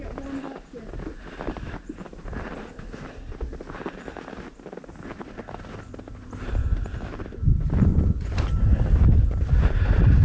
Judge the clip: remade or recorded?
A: recorded